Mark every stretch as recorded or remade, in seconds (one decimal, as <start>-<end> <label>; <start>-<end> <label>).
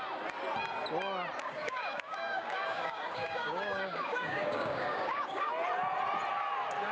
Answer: 0.0-1.4 recorded; 1.4-5.5 remade; 5.5-6.9 recorded